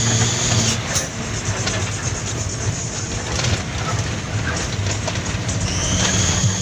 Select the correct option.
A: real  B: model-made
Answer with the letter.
A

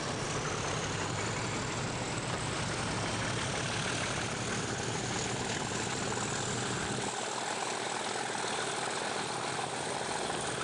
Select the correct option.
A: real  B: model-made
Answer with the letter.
A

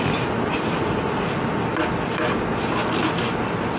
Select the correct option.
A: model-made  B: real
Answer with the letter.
B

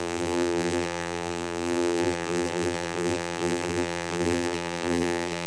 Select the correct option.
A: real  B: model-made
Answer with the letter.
B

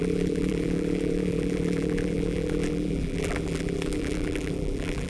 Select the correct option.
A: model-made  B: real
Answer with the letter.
A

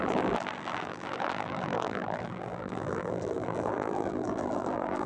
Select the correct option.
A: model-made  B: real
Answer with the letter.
A